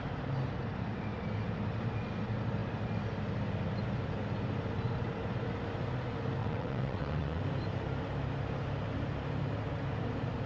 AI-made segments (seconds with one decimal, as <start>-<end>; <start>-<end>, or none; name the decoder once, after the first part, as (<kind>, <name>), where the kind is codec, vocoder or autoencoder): 6.4-7.4 (vocoder, WaveNeXt)